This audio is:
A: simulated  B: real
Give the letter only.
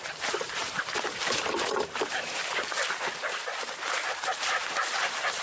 B